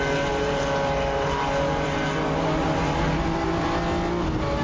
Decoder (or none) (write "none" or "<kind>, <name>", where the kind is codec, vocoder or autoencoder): none